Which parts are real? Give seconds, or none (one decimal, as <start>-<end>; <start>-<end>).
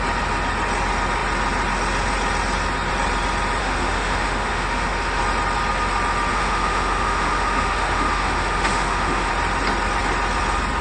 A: 0.0-3.6; 5.2-6.3; 9.3-10.8